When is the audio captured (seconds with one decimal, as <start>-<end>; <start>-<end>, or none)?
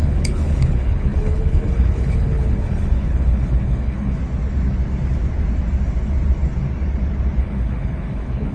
4.2-7.4